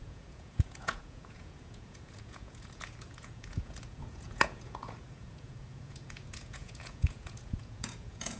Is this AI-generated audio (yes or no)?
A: yes